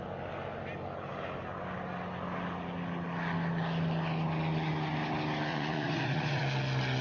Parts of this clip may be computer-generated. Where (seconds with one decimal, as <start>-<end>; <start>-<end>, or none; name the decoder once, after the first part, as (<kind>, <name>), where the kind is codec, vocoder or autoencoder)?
5.5-6.4 (vocoder, Vocos)